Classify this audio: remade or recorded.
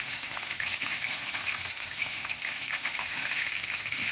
remade